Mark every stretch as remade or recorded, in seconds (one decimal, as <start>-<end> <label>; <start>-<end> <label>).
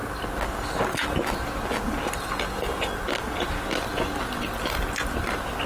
0.0-5.7 recorded